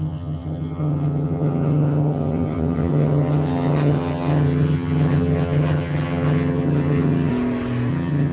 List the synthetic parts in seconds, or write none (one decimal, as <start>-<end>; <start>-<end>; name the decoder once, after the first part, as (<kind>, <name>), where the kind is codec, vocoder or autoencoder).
0.0-7.3 (vocoder, HiFi-GAN); 7.9-8.3